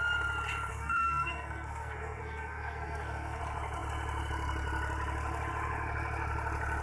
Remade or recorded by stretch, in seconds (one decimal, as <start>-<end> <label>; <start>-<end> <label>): 0.0-0.7 recorded; 0.7-3.4 remade; 3.4-6.8 recorded